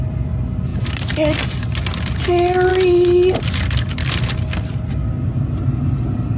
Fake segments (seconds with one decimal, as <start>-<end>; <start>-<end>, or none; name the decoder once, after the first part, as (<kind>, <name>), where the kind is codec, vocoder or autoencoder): none